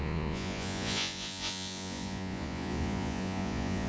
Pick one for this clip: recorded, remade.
remade